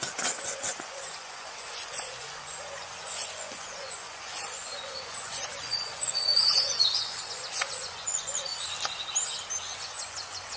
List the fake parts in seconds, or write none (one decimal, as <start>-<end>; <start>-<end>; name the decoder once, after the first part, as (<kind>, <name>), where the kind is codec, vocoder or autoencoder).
0.0-8.5 (vocoder, Vocos); 9.6-10.6